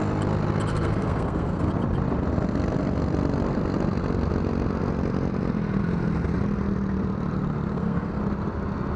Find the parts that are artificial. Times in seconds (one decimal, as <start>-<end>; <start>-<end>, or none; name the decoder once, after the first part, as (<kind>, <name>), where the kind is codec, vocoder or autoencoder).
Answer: 0.7-1.7 (codec, SNAC); 7.7-8.2